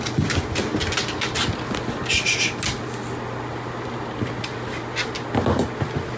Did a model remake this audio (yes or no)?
no